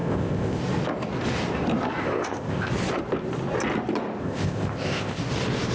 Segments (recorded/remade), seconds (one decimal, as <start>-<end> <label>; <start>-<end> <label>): 0.0-0.6 remade; 0.6-2.0 recorded; 2.0-2.7 remade; 2.7-4.2 recorded; 4.2-5.2 remade; 5.2-5.7 recorded